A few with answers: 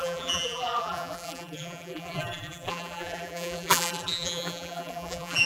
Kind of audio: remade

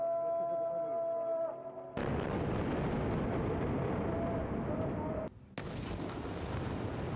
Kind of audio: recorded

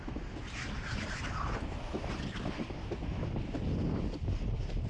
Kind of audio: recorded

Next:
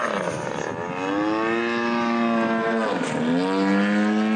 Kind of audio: recorded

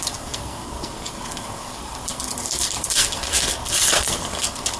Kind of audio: remade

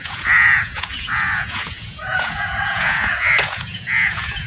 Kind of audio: remade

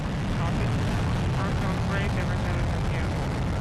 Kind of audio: recorded